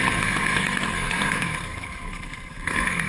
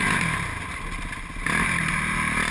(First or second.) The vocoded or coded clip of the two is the first